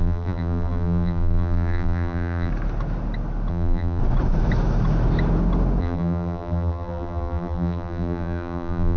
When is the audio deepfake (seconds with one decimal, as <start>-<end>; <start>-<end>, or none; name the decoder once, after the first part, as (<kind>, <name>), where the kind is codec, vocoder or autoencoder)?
0.0-2.5 (vocoder, BigVGAN v2); 3.5-4.0; 5.8-9.0